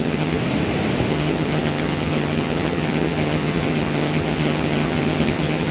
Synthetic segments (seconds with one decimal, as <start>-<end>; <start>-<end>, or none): 0.0-0.4; 1.1-5.7